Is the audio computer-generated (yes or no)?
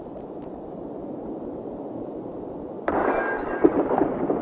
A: yes